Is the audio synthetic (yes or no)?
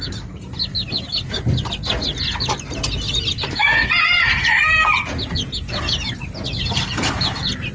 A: no